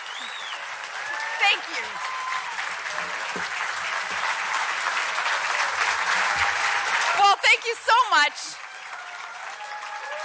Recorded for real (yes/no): yes